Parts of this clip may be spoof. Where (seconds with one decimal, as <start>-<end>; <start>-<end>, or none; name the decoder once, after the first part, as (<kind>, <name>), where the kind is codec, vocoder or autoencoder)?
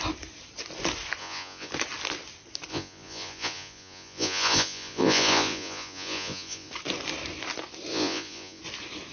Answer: 1.2-1.7 (vocoder, Vocos); 2.7-6.7; 7.9-8.6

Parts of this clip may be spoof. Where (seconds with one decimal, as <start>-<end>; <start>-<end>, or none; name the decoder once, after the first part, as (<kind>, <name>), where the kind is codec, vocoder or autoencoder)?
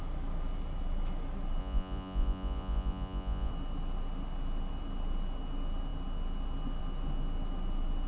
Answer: 1.6-3.5 (vocoder, Vocos)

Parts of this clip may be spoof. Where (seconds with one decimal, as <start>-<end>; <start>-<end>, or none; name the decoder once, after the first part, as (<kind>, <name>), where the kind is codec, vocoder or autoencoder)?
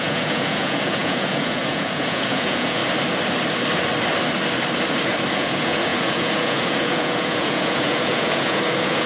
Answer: 0.0-2.8 (vocoder, Vocos); 5.3-9.1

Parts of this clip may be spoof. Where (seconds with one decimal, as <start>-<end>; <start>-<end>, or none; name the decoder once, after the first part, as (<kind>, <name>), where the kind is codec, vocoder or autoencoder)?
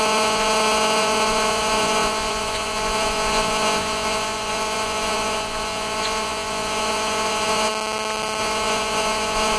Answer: 0.0-7.7 (vocoder, Vocos); 8.4-9.6